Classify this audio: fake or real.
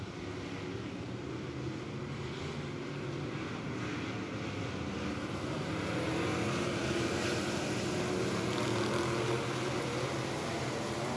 real